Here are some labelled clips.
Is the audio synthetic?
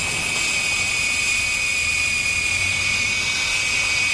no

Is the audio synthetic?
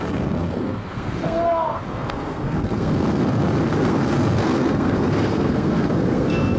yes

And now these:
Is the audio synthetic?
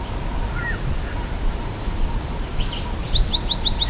no